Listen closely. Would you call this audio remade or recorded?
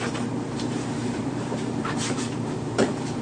remade